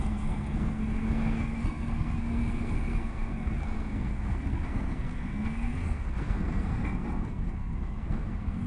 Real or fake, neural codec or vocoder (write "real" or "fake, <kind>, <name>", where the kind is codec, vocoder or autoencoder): fake, codec, SNAC